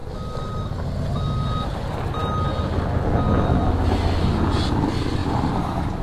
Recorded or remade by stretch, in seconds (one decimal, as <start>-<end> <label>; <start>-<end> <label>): 0.0-6.0 recorded